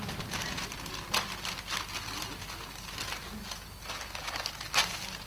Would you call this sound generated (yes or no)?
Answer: no